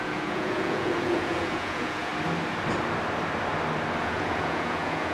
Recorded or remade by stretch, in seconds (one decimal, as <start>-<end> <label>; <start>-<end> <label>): 0.0-2.1 remade; 2.1-4.0 recorded; 4.0-5.1 remade